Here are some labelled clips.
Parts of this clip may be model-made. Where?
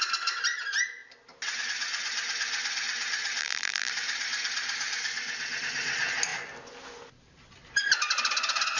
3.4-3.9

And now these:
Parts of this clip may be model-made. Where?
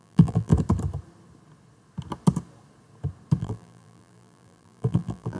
0.0-0.5; 3.4-5.4